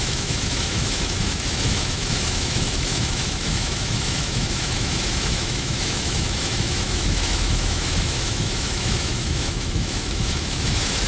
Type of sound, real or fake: fake